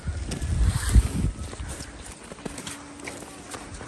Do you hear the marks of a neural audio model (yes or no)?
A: no